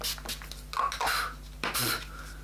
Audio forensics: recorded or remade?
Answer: recorded